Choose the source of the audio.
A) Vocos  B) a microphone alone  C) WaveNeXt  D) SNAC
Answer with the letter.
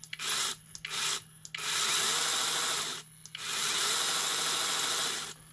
B